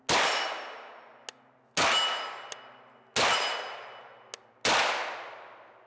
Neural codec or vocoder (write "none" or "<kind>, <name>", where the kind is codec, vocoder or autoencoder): none